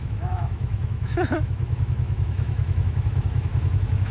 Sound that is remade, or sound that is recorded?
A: remade